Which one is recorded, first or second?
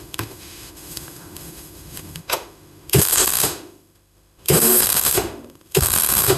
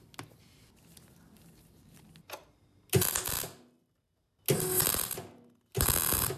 second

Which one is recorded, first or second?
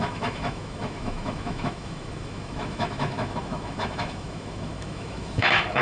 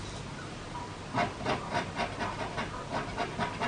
second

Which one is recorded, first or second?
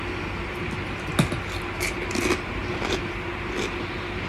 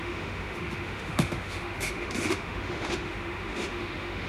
first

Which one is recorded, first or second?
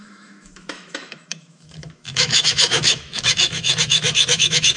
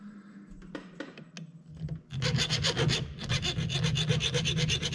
second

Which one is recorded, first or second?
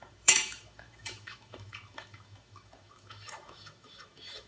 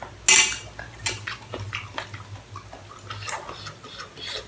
second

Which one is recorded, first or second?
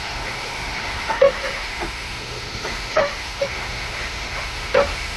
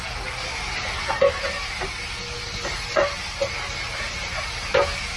second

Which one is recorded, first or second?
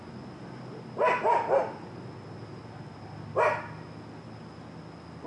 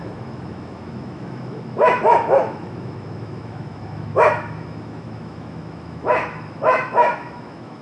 first